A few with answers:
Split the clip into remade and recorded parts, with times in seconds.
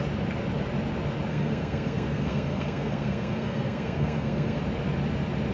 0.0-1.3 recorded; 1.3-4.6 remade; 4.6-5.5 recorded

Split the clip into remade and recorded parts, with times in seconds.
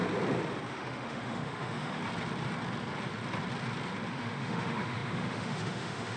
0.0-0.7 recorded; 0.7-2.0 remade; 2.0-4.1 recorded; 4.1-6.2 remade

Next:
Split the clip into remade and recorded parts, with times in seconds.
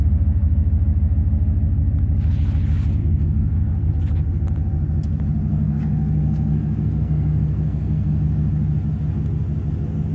0.0-3.0 recorded; 3.0-3.9 remade; 3.9-5.5 recorded; 5.5-8.5 remade; 8.5-10.1 recorded